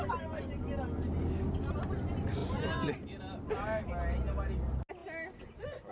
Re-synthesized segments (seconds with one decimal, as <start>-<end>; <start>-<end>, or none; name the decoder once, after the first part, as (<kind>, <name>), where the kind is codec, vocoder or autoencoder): none